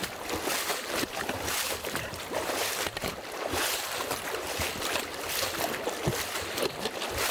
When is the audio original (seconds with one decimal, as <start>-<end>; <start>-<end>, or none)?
0.0-0.7; 5.1-7.3